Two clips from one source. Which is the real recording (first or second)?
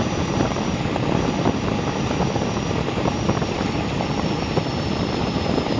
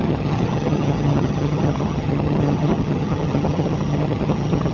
first